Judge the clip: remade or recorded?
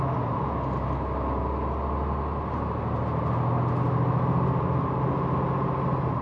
recorded